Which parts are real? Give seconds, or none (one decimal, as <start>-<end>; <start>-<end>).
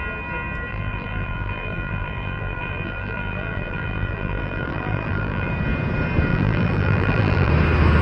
0.0-0.7; 5.5-6.3; 7.5-8.0